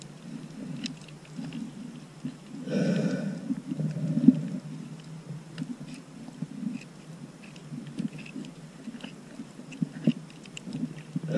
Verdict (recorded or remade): recorded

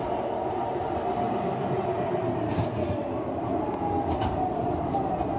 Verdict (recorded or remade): remade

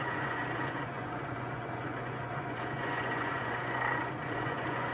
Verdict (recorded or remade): remade